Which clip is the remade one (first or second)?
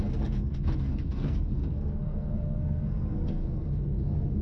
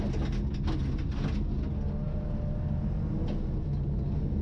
first